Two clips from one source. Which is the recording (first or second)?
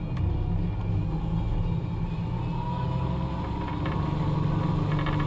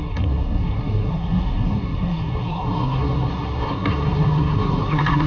first